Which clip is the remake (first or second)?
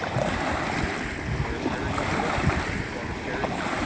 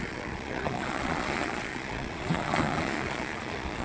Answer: second